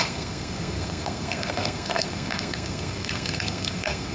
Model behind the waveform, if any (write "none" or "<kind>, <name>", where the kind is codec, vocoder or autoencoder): codec, SNAC